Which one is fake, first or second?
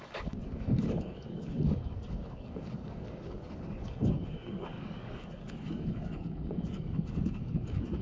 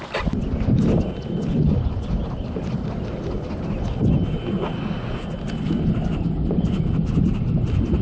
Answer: first